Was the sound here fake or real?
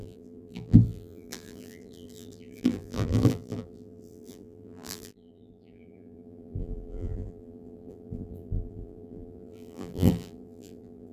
fake